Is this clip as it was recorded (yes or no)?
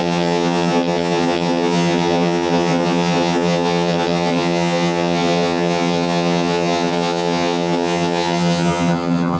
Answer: no